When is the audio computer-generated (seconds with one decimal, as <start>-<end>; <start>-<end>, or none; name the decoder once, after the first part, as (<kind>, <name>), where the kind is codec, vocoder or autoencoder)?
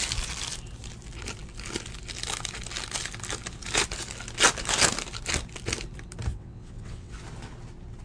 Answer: 6.3-7.1 (vocoder, WaveNeXt)